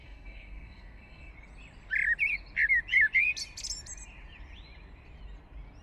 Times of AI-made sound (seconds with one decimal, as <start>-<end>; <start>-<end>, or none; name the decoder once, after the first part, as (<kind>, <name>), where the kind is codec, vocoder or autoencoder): 0.0-1.3 (codec, SNAC)